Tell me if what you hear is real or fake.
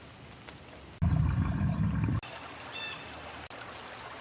real